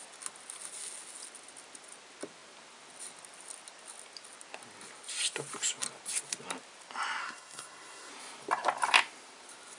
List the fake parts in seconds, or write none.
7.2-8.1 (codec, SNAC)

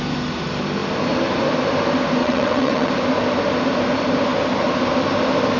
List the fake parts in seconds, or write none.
2.2-2.9 (vocoder, WaveNeXt)